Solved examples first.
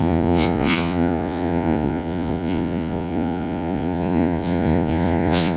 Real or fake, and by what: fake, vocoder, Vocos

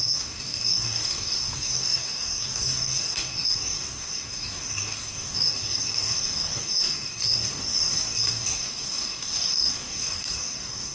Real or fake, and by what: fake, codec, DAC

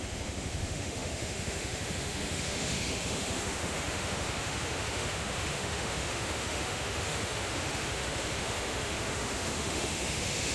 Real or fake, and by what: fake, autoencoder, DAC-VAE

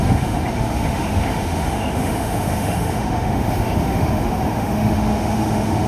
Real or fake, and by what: fake, autoencoder, DAC-VAE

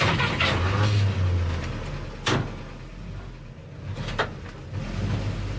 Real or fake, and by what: real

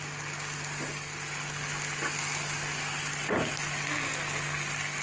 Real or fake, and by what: real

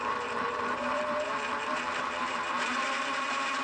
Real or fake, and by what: fake, vocoder, BigVGAN v2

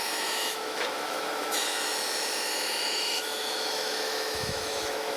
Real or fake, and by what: fake, autoencoder, DAC-VAE